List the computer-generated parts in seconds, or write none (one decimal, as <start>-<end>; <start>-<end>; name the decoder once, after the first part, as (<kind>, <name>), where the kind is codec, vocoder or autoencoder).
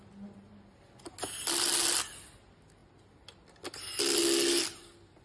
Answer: none